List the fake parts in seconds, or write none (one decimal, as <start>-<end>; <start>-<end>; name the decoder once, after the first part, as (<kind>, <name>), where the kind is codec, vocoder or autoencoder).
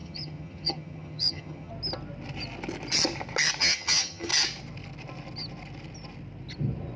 0.0-1.7 (vocoder, HiFi-GAN); 3.6-4.3